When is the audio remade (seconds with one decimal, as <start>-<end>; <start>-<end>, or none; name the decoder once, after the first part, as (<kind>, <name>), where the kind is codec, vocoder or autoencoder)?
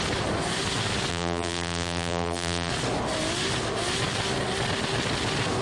1.1-2.7 (vocoder, BigVGAN v2)